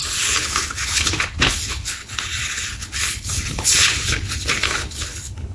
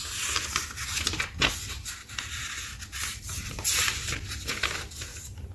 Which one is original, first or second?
second